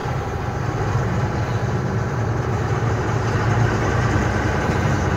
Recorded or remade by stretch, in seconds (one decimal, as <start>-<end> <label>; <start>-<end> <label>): 0.0-5.2 remade